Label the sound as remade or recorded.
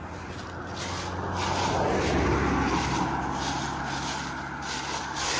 recorded